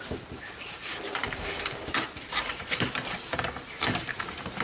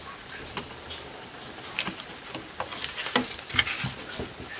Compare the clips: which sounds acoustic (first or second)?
second